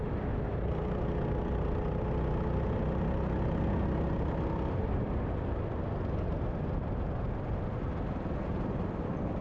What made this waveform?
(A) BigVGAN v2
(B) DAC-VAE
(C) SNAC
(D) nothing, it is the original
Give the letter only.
D